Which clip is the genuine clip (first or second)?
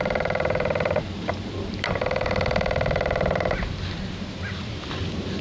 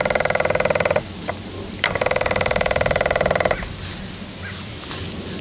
second